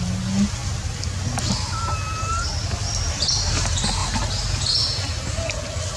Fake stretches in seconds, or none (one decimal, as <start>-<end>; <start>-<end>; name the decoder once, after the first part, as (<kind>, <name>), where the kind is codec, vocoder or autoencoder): none